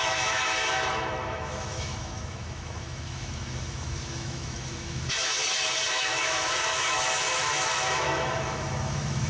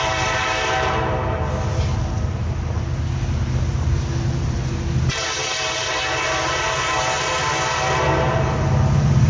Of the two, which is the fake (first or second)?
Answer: first